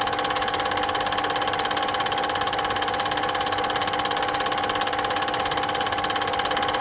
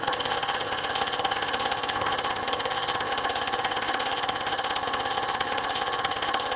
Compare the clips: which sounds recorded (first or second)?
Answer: first